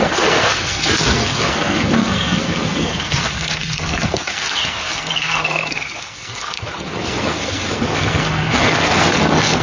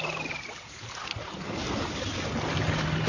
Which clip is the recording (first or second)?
second